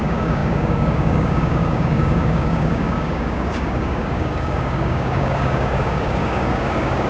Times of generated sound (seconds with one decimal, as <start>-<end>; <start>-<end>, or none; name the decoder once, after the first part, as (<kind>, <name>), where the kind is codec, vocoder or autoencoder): 0.0-7.1 (codec, DAC)